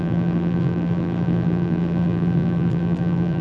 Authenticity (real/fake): fake